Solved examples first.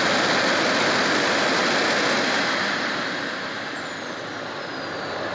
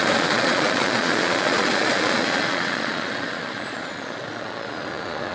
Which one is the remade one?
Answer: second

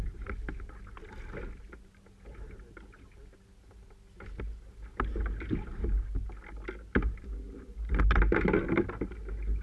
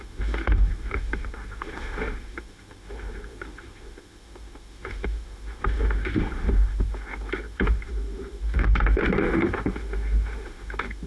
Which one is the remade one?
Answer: second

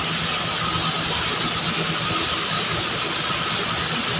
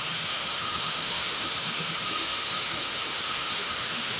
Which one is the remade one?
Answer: second